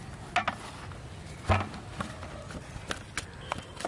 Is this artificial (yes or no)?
no